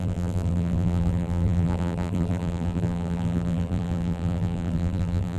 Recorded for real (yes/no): no